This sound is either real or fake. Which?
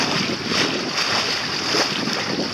fake